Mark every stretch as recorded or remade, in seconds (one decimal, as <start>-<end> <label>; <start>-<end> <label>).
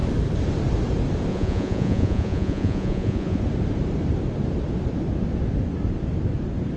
0.0-1.3 recorded; 1.3-3.4 remade; 3.4-6.8 recorded